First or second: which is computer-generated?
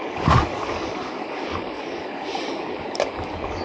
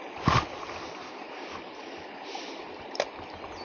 first